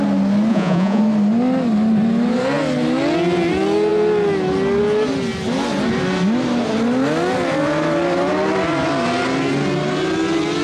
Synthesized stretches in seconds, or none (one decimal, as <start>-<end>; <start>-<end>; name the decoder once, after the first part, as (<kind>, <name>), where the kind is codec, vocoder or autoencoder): 0.5-1.0 (vocoder, Vocos)